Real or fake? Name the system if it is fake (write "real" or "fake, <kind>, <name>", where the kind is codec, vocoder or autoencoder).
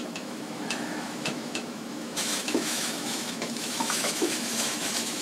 fake, autoencoder, DAC-VAE